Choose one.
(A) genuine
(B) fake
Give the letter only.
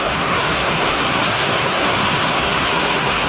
B